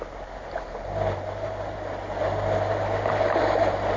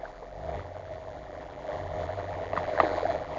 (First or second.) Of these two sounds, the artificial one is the second